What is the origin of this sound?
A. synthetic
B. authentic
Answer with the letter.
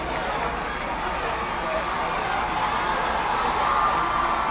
B